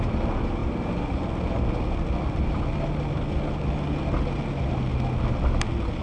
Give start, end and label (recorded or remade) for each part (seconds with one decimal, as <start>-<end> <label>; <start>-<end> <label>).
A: 0.0-6.0 recorded